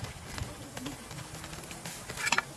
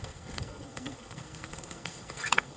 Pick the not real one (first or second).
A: second